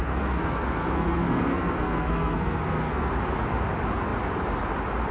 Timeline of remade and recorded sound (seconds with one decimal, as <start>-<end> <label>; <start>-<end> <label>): 0.0-3.1 remade; 3.1-5.1 recorded